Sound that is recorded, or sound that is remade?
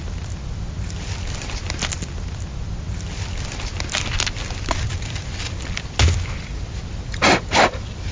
recorded